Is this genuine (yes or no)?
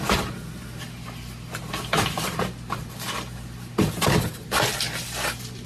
yes